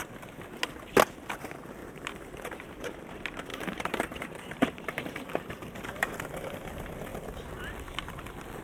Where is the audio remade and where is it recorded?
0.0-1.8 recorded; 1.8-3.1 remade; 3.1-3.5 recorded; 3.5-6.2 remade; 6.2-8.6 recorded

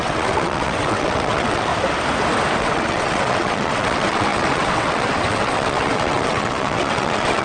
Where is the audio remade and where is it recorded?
0.0-1.7 remade; 1.7-2.6 recorded; 2.6-7.4 remade

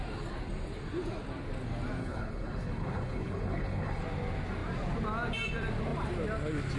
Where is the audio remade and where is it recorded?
0.0-2.0 recorded; 2.0-4.0 remade; 4.0-6.8 recorded

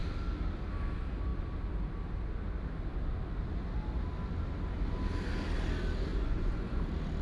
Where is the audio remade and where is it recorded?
0.0-6.1 recorded; 6.1-6.8 remade; 6.8-7.2 recorded

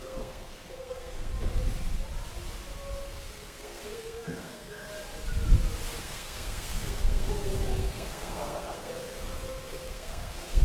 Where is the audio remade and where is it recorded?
0.0-1.3 remade; 1.3-3.1 recorded; 3.1-4.9 remade; 4.9-6.0 recorded; 6.0-10.6 remade

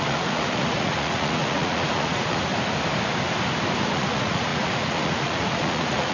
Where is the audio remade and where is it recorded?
0.0-2.5 remade; 2.5-3.8 recorded; 3.8-6.1 remade

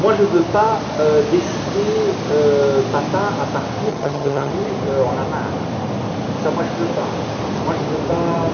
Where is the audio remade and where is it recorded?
0.0-3.9 recorded; 3.9-4.5 remade; 4.5-8.5 recorded